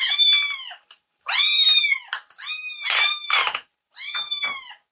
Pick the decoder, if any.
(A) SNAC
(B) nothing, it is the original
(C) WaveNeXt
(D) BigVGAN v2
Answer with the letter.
D